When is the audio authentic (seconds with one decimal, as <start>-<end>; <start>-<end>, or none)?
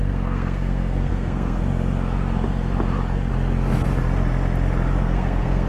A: 1.6-5.0